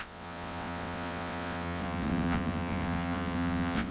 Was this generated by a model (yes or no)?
yes